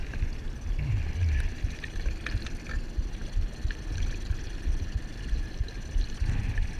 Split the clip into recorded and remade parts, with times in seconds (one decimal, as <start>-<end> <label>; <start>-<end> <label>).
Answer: 0.0-6.8 recorded